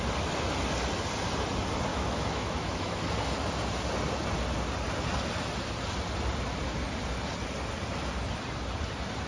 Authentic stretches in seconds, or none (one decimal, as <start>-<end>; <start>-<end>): 0.0-1.9; 3.0-9.3